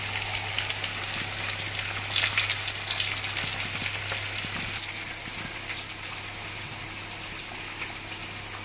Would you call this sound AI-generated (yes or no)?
no